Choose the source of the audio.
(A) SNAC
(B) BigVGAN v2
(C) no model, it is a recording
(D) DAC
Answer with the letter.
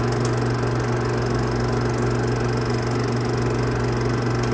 C